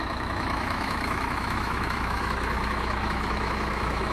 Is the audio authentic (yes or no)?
no